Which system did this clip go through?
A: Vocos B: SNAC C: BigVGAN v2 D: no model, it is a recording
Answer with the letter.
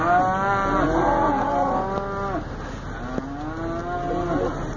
D